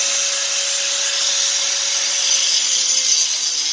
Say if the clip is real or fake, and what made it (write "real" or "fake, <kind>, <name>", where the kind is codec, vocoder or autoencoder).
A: real